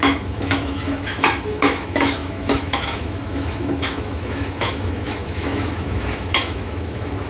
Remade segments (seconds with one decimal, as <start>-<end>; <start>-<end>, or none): 0.0-7.3